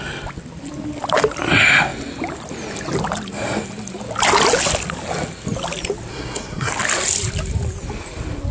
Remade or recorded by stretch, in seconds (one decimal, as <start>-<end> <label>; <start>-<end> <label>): 0.0-6.1 recorded; 6.1-6.7 remade; 6.7-8.5 recorded